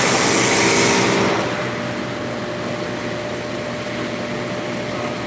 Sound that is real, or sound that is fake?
real